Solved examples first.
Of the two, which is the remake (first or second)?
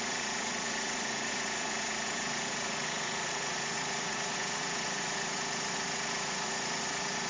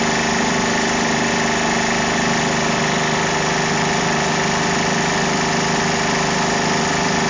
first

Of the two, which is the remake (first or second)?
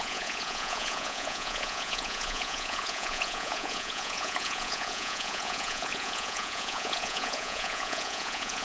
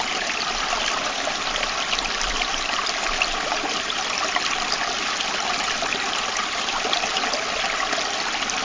first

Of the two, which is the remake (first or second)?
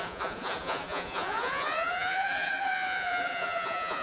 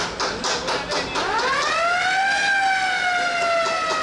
first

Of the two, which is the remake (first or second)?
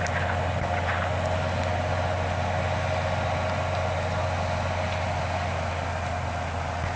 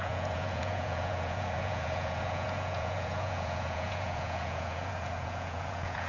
second